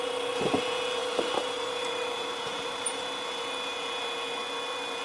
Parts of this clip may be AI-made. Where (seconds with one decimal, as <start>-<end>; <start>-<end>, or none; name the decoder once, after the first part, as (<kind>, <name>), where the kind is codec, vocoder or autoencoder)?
0.0-0.6 (vocoder, BigVGAN v2); 1.0-3.0